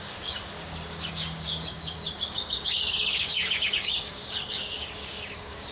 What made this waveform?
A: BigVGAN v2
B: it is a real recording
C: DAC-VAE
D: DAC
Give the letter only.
D